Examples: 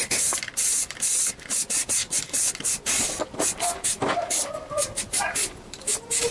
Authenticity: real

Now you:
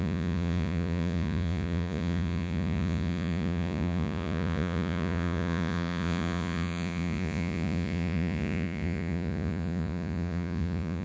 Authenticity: fake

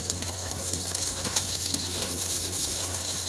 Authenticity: fake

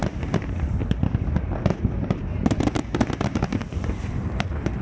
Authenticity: fake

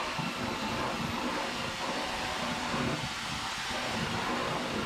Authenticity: real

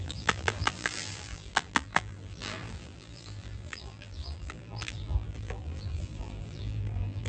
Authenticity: fake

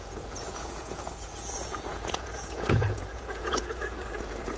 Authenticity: fake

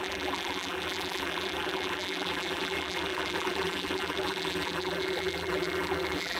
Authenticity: fake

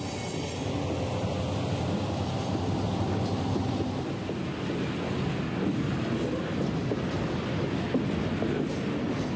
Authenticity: real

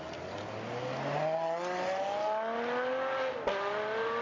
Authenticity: real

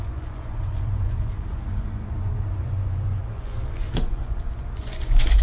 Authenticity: fake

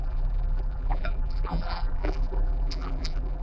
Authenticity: fake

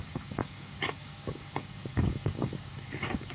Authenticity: fake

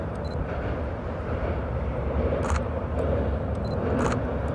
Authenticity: real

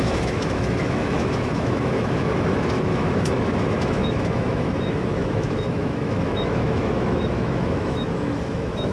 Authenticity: fake